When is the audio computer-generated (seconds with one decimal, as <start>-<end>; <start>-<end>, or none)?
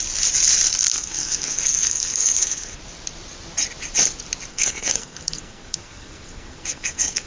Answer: 0.9-2.8; 4.5-7.3